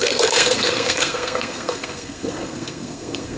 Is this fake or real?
fake